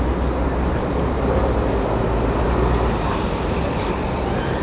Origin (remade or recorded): recorded